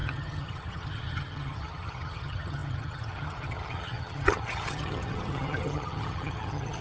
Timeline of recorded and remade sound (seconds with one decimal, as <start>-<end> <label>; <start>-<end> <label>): 0.0-6.8 remade